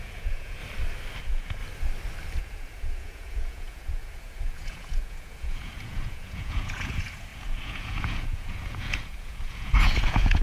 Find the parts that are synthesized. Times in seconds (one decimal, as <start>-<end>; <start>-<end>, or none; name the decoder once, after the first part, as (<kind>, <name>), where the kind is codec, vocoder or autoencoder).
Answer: 0.0-0.6 (vocoder, Vocos); 1.2-1.6; 2.4-10.4